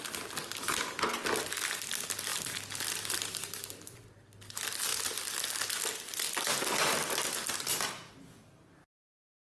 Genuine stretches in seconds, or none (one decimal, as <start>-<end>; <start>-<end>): 0.0-9.5